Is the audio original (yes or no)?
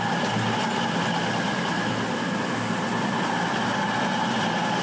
yes